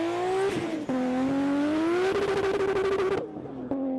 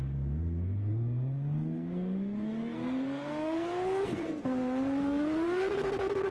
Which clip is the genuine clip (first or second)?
first